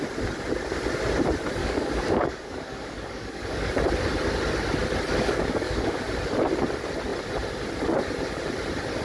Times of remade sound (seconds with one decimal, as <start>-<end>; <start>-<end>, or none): 1.6-3.7; 5.1-6.0